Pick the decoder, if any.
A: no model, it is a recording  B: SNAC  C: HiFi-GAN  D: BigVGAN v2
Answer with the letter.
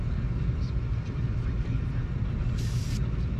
A